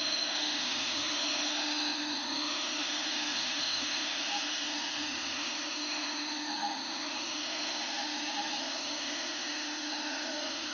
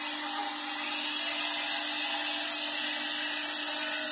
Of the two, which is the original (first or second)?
second